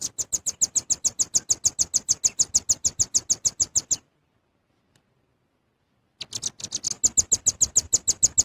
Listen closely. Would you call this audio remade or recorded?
recorded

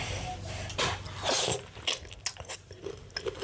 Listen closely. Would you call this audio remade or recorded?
recorded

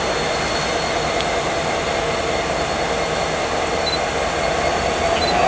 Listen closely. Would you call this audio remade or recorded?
recorded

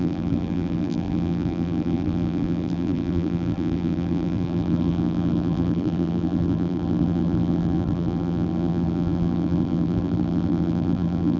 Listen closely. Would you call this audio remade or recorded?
remade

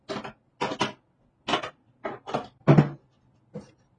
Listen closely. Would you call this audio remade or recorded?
recorded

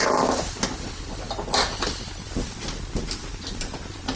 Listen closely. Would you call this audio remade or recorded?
recorded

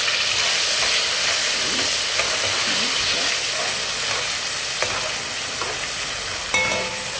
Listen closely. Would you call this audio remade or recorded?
recorded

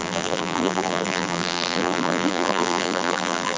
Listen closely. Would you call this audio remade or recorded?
remade